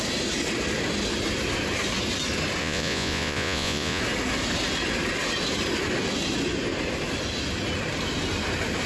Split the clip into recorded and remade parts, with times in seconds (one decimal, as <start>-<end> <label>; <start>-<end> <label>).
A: 0.0-2.6 recorded; 2.6-4.0 remade; 4.0-8.9 recorded